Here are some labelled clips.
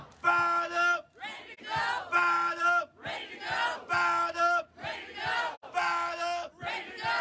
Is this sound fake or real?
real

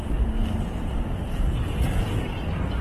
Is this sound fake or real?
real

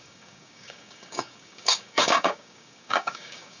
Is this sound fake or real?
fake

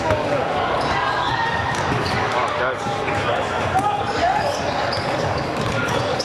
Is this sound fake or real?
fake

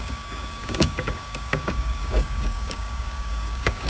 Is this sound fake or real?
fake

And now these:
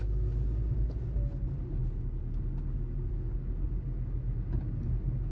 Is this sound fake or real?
real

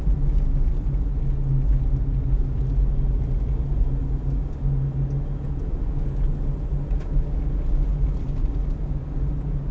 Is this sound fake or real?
real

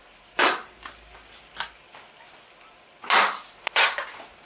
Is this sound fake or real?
real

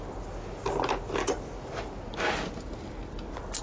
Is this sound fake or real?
real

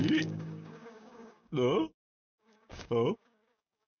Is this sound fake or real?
fake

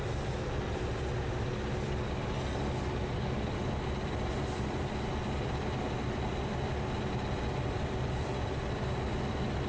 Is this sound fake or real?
real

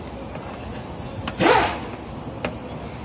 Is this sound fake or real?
real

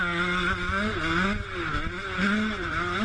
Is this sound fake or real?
real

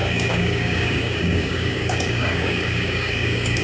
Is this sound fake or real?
fake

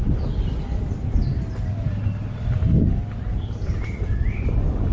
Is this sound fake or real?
real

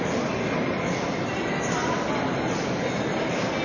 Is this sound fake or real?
real